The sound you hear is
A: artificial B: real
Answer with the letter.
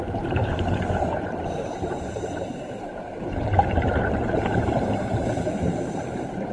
A